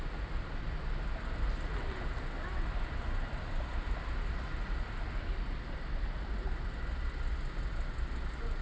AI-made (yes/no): no